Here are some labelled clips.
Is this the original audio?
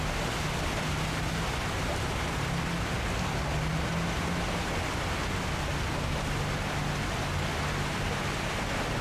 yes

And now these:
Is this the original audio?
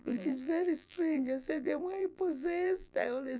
no